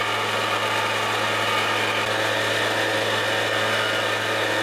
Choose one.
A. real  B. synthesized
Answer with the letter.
A